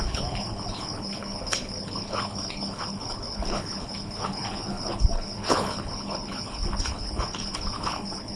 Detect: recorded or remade remade